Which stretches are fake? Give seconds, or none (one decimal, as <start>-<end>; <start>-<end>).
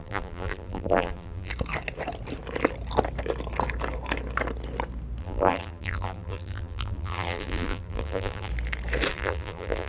0.0-1.5; 5.2-8.5; 9.1-9.9